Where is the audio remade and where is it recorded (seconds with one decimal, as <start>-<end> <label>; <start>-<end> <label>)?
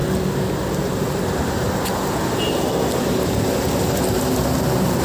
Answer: 0.0-5.0 recorded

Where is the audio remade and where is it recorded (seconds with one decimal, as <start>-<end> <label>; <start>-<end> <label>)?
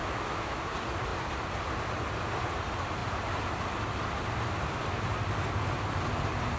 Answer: 0.0-0.6 remade; 0.6-6.6 recorded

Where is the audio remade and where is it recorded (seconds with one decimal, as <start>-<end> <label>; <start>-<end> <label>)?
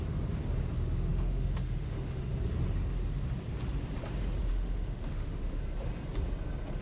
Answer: 0.0-1.1 recorded; 1.1-2.3 remade; 2.3-4.5 recorded; 4.5-5.6 remade; 5.6-6.8 recorded